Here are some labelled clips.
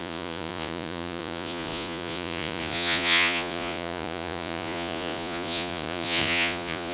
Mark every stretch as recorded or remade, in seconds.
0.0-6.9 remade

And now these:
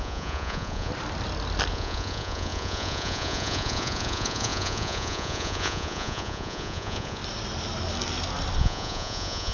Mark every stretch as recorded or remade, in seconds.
0.0-0.9 remade; 0.9-1.7 recorded; 1.7-7.2 remade; 7.2-8.6 recorded; 8.6-9.5 remade

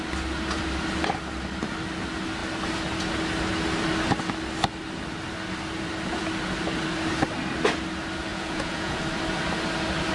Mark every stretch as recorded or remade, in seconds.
0.0-8.3 recorded; 8.3-9.0 remade; 9.0-10.1 recorded

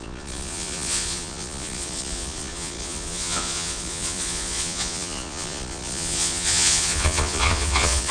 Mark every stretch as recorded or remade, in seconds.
0.0-8.1 remade

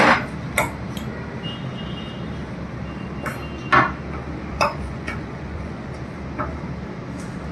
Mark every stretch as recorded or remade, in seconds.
0.0-4.5 recorded; 4.5-5.9 remade; 5.9-7.5 recorded